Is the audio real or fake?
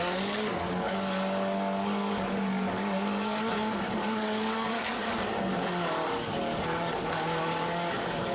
fake